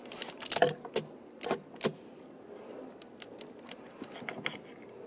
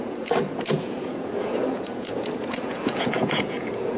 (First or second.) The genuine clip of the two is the first